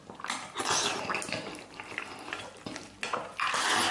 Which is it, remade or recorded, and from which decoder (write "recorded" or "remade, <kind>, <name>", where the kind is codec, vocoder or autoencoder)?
recorded